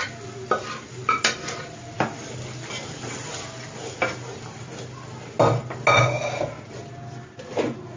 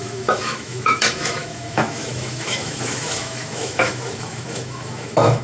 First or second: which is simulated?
second